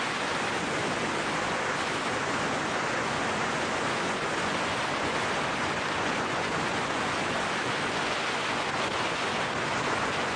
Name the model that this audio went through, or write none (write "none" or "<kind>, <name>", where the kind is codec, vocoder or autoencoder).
vocoder, Vocos